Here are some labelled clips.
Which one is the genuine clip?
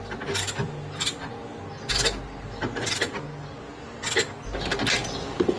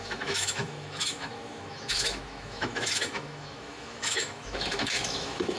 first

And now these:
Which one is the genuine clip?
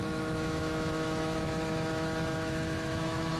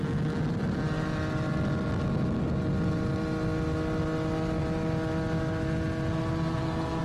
second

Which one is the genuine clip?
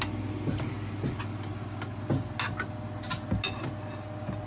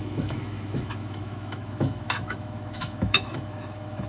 first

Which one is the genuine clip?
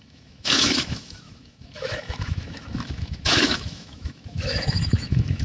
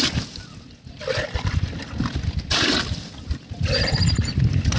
second